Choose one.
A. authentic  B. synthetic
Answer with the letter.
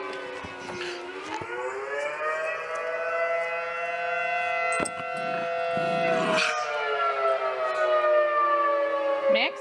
A